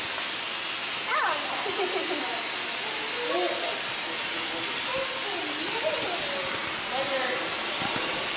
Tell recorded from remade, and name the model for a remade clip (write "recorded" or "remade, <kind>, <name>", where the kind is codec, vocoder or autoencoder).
recorded